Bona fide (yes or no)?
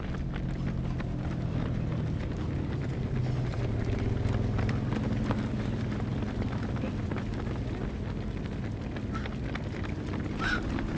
yes